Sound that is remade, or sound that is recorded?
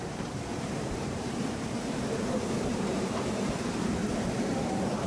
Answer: remade